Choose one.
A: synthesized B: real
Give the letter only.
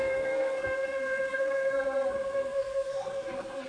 A